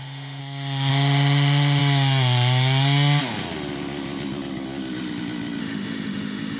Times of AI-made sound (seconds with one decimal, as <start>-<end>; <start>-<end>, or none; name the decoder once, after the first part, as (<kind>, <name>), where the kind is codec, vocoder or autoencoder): 0.0-0.4 (autoencoder, DAC-VAE); 0.9-1.8; 5.6-6.6